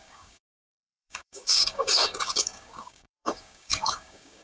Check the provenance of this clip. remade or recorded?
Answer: remade